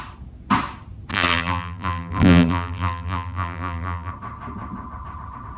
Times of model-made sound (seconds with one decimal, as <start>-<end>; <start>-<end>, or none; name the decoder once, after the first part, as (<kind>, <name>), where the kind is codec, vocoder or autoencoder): 1.1-4.1 (vocoder, BigVGAN v2)